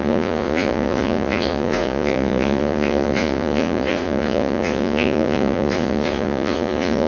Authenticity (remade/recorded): remade